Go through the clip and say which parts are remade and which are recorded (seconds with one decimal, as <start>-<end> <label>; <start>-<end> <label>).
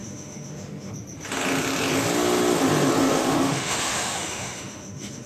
0.0-0.9 remade; 0.9-3.0 recorded; 3.0-5.3 remade